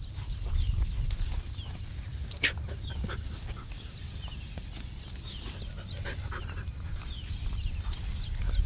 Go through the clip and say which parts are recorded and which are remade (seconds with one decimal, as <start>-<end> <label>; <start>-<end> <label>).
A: 0.0-8.7 recorded